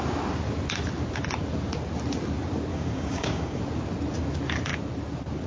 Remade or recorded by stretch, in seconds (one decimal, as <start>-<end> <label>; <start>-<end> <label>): 0.0-2.7 recorded; 2.7-3.6 remade; 3.6-5.5 recorded